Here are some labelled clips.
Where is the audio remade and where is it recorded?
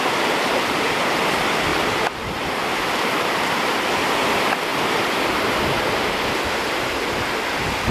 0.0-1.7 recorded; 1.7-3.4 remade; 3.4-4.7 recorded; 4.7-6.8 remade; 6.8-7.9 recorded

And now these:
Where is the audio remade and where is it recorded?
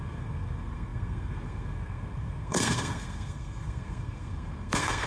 0.0-5.1 remade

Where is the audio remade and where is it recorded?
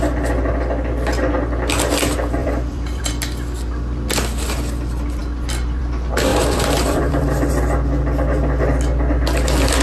0.0-2.4 recorded; 2.4-3.1 remade; 3.1-6.3 recorded; 6.3-7.5 remade; 7.5-9.8 recorded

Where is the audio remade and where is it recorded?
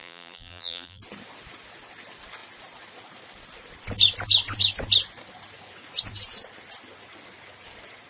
0.0-1.0 remade; 1.0-8.1 recorded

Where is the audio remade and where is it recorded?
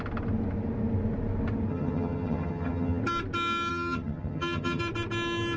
0.0-1.7 recorded; 1.7-3.0 remade; 3.0-3.7 recorded; 3.7-4.8 remade; 4.8-5.6 recorded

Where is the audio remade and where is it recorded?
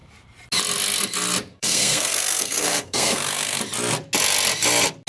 0.0-1.5 recorded; 1.5-3.6 remade; 3.6-5.1 recorded